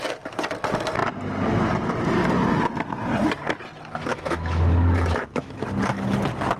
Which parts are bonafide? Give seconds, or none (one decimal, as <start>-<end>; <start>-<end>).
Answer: 0.0-4.1; 5.5-6.6